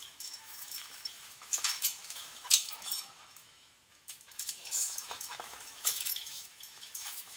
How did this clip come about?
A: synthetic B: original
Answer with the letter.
A